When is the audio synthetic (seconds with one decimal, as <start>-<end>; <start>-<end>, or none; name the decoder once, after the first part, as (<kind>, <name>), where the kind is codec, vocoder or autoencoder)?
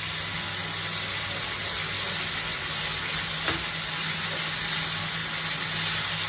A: none